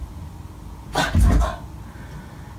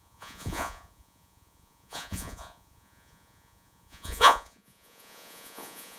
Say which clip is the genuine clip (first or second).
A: first